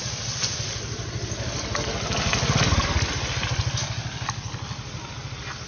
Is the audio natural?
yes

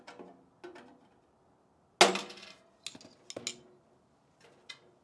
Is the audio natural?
yes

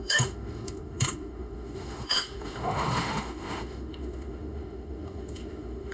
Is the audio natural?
no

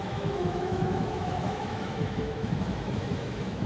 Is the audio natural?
no